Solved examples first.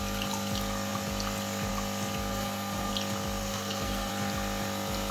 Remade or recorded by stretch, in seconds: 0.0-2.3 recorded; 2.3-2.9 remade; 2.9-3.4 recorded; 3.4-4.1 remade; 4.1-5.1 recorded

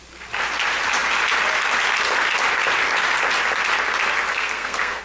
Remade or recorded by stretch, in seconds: 0.0-4.3 recorded; 4.3-5.0 remade

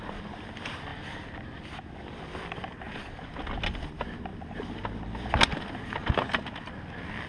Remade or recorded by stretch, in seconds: 0.0-7.3 recorded

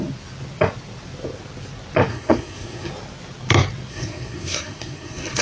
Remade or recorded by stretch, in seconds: 0.0-2.1 recorded; 2.1-2.9 remade; 2.9-3.9 recorded; 3.9-5.4 remade

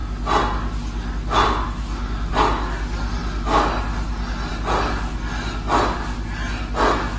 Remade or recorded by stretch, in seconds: 0.0-7.2 recorded

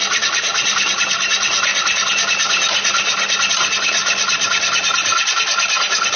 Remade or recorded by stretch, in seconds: 0.0-1.7 remade; 1.7-3.5 recorded; 3.5-6.2 remade

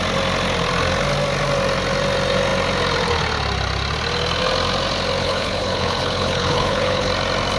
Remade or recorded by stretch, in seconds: 0.0-5.2 recorded; 5.2-7.1 remade; 7.1-7.6 recorded